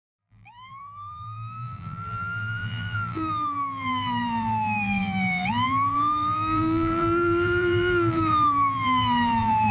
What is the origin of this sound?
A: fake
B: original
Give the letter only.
A